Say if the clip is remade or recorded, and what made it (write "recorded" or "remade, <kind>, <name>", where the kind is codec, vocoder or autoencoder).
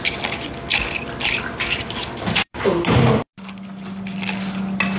recorded